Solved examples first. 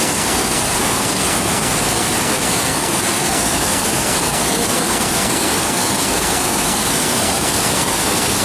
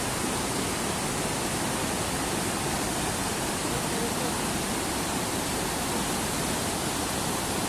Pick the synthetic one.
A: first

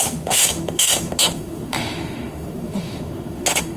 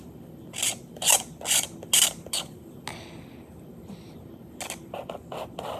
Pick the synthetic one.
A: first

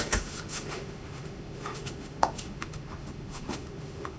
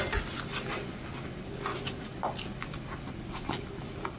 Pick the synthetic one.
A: first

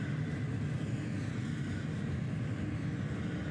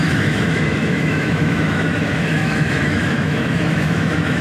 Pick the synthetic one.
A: second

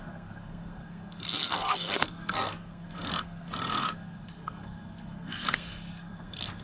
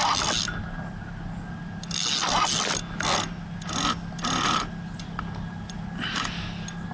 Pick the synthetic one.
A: first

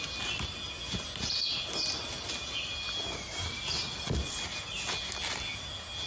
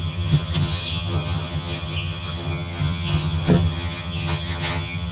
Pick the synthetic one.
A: second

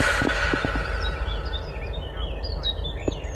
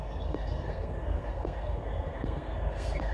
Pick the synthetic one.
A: second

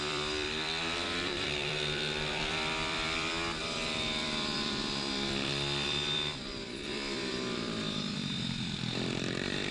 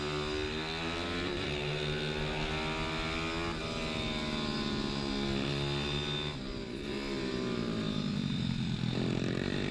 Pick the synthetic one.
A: first